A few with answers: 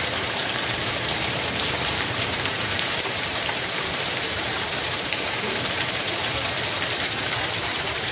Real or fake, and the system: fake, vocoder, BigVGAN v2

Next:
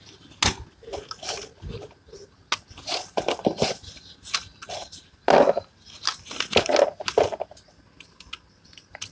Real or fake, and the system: real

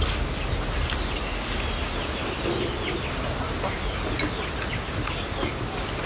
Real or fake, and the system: real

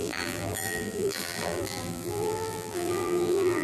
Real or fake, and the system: fake, vocoder, BigVGAN v2